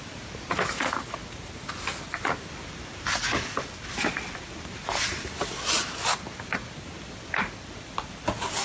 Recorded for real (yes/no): yes